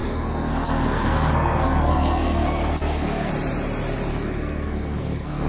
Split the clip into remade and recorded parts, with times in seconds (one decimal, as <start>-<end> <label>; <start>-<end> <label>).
0.0-3.3 remade; 3.3-4.1 recorded; 4.1-5.5 remade